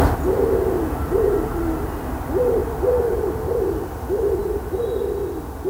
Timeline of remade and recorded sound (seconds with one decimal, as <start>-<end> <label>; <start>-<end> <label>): 0.0-2.6 recorded; 2.6-4.0 remade; 4.0-5.7 recorded